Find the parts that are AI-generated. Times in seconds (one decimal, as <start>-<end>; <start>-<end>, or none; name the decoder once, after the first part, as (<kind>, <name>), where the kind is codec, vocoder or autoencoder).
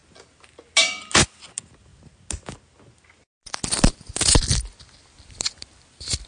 none